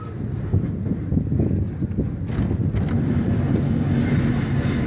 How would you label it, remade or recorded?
recorded